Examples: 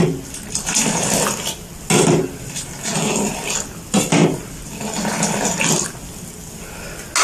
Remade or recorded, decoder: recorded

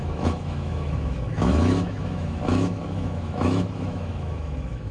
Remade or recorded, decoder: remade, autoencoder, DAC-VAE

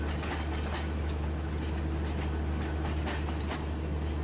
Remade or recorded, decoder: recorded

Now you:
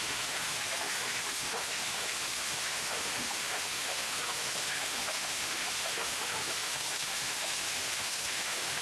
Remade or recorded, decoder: remade, autoencoder, DAC-VAE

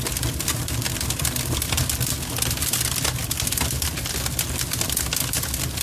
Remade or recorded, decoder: recorded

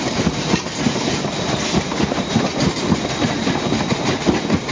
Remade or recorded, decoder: recorded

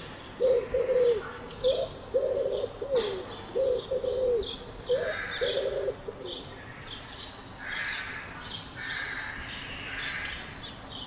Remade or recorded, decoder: recorded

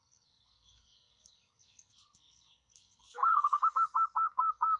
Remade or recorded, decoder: remade, codec, SNAC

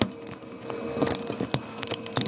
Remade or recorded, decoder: recorded